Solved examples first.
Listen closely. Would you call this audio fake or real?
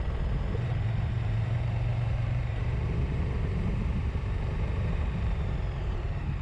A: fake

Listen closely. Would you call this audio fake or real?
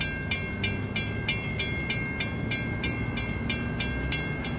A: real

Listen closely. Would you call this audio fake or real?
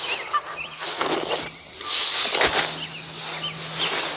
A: real